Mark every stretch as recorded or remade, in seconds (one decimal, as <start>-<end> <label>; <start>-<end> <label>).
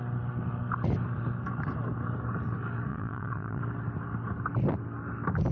0.0-2.9 recorded; 2.9-3.6 remade; 3.6-5.5 recorded